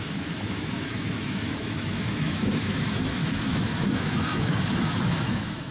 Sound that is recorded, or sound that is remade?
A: remade